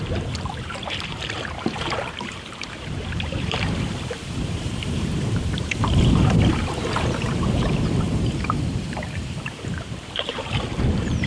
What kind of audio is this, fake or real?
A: fake